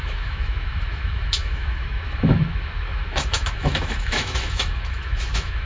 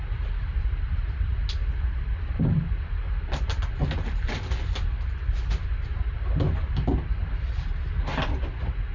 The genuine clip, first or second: second